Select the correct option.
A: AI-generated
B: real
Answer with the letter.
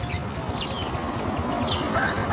B